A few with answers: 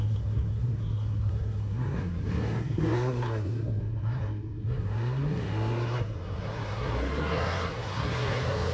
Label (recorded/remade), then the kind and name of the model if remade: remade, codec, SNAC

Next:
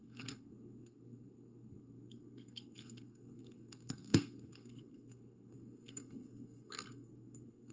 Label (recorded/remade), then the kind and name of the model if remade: remade, codec, SNAC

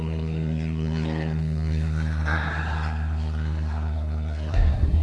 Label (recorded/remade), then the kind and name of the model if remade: remade, codec, SNAC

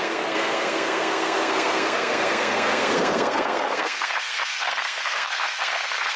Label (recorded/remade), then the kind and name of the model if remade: remade, codec, SNAC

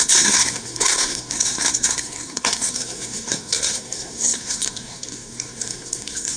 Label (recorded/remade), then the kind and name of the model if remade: remade, codec, SNAC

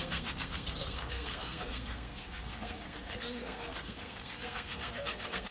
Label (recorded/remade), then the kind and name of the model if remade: remade, codec, SNAC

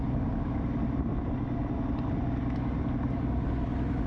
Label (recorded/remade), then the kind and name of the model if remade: recorded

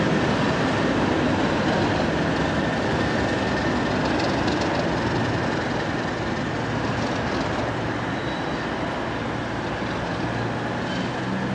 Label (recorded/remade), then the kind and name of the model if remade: recorded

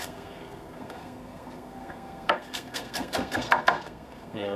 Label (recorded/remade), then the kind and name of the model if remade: remade, codec, SNAC